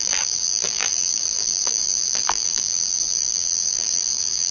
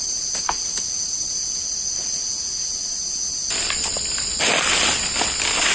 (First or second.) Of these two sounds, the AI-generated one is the first